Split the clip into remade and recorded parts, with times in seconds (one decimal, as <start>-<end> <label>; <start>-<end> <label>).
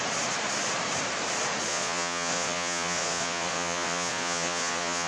0.0-1.7 recorded; 1.7-5.1 remade